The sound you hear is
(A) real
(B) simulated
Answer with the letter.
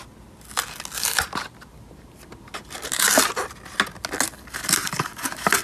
A